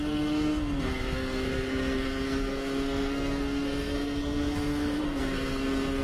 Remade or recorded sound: remade